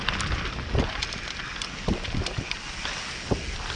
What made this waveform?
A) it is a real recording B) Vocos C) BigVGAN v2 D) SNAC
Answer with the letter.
A